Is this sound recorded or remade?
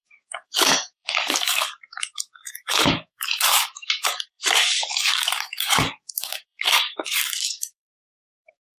remade